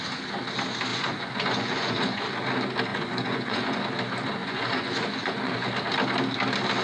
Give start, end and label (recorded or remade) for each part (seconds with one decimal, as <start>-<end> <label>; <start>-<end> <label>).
0.0-0.9 recorded; 0.9-2.2 remade; 2.2-2.9 recorded; 2.9-3.8 remade; 3.8-4.4 recorded; 4.4-5.7 remade; 5.7-6.8 recorded